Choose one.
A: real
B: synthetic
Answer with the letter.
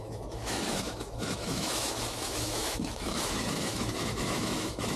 B